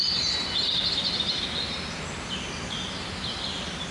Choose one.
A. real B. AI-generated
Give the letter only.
A